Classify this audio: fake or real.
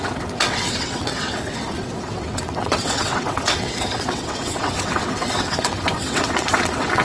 fake